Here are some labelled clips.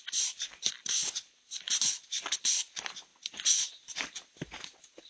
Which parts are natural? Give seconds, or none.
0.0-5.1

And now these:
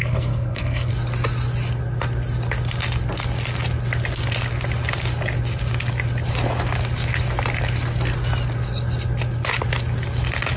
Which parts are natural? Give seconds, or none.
0.9-10.6

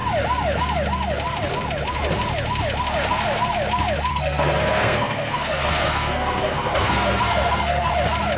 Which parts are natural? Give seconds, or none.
0.0-4.1; 7.9-8.4